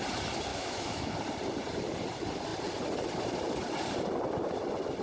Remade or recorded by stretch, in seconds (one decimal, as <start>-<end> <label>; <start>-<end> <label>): 0.0-0.5 recorded; 0.5-1.1 remade; 1.1-5.0 recorded